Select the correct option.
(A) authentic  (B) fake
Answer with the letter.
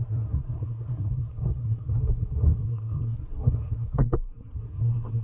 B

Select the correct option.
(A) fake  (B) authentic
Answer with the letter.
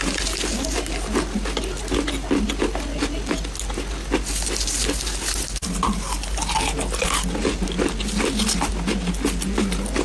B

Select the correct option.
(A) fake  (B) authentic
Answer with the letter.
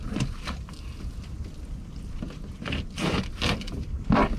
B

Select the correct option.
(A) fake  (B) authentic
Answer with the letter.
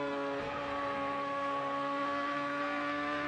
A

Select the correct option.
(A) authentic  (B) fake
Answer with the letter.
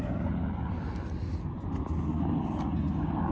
A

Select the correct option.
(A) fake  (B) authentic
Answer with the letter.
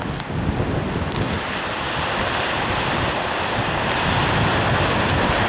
B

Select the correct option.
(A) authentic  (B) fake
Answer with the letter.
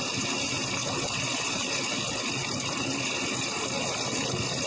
A